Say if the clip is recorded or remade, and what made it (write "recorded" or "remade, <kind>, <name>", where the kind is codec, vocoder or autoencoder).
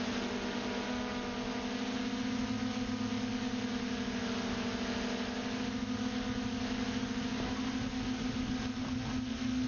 recorded